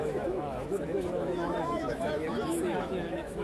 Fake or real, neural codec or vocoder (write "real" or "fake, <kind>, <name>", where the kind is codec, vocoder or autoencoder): fake, autoencoder, DAC-VAE